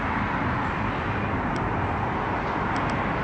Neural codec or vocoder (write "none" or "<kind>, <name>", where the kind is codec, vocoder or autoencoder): none